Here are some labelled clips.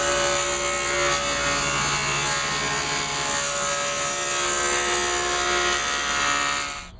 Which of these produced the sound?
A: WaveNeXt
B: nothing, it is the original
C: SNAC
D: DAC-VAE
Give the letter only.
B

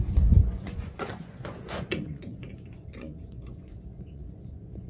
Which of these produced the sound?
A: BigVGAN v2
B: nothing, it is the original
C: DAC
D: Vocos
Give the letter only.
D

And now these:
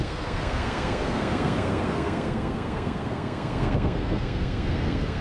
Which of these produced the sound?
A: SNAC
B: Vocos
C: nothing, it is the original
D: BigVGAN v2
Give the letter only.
A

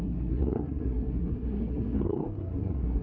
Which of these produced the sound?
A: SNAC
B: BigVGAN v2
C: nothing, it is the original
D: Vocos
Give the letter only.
A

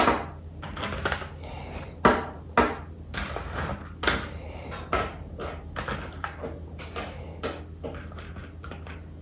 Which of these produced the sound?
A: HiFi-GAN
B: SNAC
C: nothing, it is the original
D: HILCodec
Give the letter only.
C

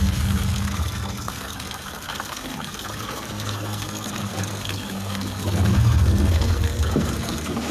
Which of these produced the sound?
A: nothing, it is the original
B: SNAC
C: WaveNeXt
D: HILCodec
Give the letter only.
B